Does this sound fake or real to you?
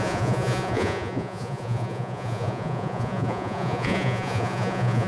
fake